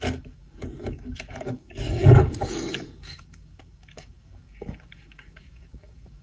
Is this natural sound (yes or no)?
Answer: no